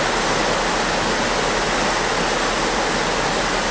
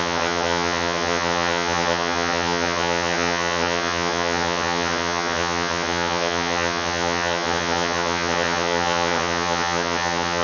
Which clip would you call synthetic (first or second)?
second